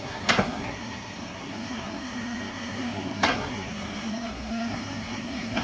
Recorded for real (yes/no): no